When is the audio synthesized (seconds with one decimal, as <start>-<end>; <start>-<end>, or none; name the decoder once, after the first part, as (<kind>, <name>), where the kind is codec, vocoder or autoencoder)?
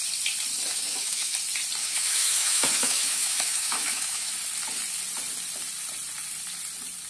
0.7-1.3 (autoencoder, DAC-VAE); 1.8-4.3